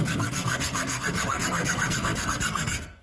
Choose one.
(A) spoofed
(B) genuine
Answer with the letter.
A